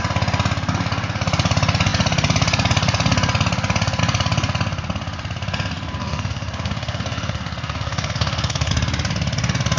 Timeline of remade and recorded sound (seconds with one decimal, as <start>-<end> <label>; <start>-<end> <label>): 0.0-6.0 recorded; 6.0-8.7 remade; 8.7-9.8 recorded